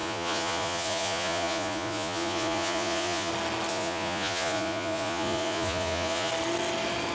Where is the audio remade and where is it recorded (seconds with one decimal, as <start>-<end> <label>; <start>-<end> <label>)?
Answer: 0.0-3.3 remade; 3.3-3.7 recorded; 3.7-6.3 remade; 6.3-7.1 recorded